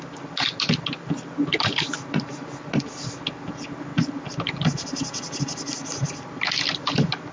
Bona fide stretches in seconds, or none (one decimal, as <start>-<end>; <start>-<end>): 0.0-7.3